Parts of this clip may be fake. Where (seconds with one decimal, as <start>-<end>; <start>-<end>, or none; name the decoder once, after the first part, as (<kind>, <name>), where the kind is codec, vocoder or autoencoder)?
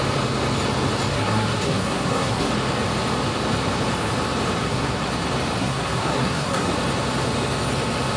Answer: 1.1-2.5 (codec, SNAC); 4.6-5.1; 5.6-6.7